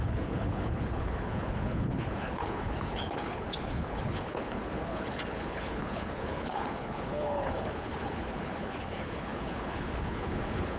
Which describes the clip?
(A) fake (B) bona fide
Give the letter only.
A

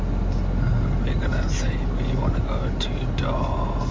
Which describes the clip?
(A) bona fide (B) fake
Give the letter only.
A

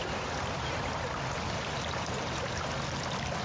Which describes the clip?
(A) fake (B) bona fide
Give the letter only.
B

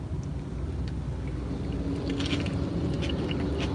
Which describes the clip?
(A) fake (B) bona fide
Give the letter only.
B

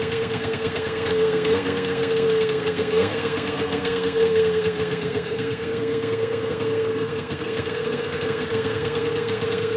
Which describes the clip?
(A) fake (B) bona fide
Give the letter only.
A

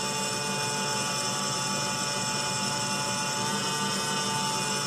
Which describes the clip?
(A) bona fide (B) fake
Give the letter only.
A